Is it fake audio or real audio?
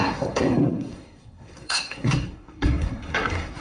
fake